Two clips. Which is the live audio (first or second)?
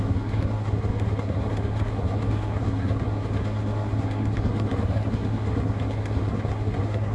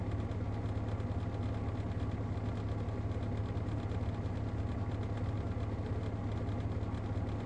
second